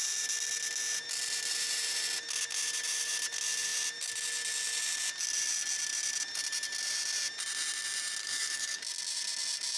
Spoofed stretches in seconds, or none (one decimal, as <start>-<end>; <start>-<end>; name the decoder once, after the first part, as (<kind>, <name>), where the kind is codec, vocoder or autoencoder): 8.2-8.8 (codec, DAC)